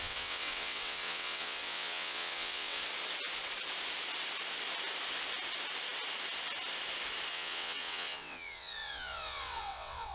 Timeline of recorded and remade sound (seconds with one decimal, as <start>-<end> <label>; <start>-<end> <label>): 0.0-2.8 remade; 2.8-7.3 recorded; 7.3-10.1 remade